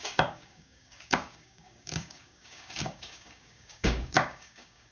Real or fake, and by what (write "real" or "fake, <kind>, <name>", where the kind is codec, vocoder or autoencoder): fake, codec, DAC